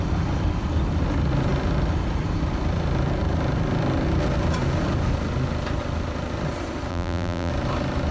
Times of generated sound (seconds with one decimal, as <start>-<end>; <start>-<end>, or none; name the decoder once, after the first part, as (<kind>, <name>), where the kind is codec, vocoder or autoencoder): 6.9-7.5 (vocoder, BigVGAN v2)